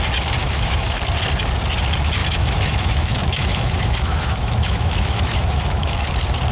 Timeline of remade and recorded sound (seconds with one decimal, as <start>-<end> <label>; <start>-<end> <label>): 0.0-0.4 recorded; 0.4-1.0 remade; 1.0-2.2 recorded; 2.2-6.1 remade; 6.1-6.5 recorded